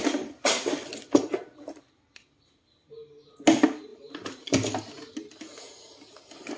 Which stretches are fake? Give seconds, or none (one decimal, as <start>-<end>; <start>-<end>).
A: none